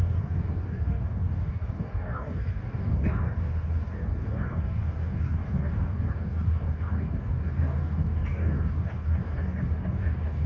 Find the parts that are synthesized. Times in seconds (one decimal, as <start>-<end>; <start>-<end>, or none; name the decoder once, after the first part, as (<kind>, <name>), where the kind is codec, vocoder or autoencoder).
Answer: 0.0-10.5 (codec, DAC)